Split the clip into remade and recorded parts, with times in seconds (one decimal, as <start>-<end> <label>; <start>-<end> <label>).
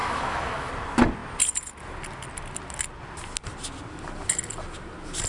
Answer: 0.0-0.7 remade; 0.7-5.3 recorded